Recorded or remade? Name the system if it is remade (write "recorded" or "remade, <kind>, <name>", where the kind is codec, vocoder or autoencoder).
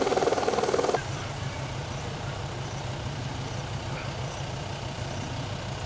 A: recorded